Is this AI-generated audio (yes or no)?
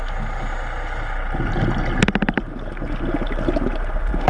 no